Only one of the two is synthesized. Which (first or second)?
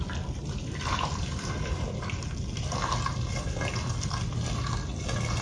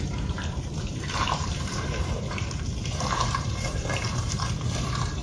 second